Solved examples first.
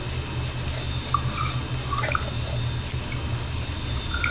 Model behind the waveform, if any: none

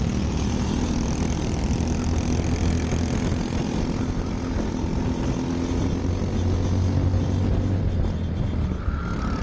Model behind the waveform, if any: none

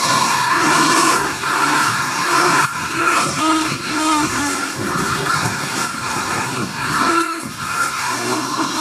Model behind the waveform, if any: codec, SNAC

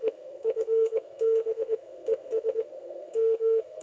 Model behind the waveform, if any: codec, SNAC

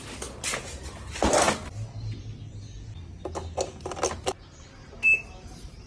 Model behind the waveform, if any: none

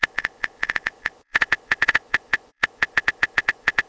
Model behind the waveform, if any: vocoder, Vocos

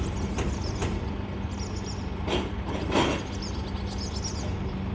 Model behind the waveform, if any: none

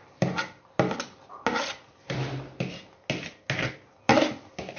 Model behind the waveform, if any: none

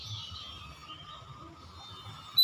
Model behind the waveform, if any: none